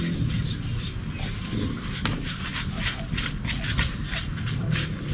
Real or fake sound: real